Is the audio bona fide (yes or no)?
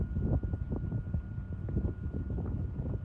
yes